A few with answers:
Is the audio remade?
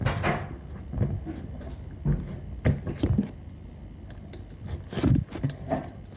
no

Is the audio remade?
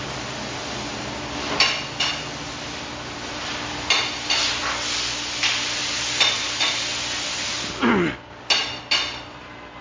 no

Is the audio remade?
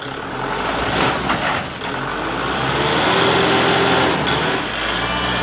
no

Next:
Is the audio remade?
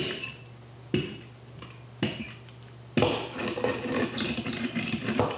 no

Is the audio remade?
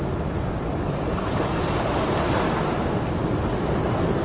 no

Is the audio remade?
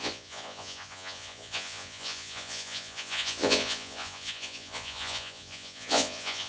yes